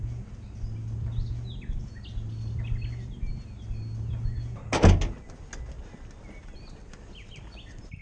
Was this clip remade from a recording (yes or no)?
no